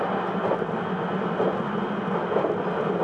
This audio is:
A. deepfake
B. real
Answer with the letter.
B